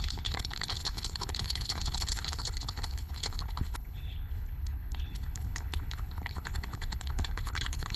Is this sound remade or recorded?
remade